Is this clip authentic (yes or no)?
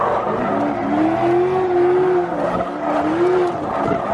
yes